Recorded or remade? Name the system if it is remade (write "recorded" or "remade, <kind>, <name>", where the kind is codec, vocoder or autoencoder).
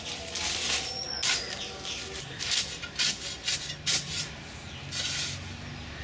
recorded